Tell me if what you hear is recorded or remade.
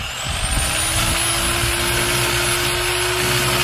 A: recorded